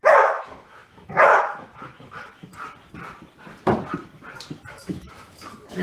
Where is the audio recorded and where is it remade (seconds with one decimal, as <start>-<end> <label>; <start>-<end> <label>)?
0.0-2.5 remade; 2.5-4.7 recorded; 4.7-5.8 remade